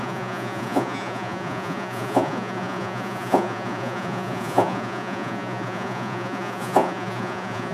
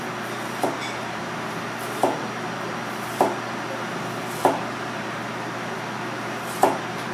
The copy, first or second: first